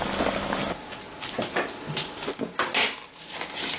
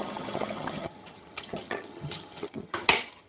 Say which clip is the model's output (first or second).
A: second